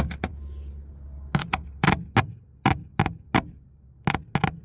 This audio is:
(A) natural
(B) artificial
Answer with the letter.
A